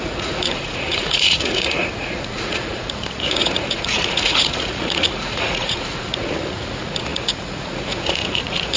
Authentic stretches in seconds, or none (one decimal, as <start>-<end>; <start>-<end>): none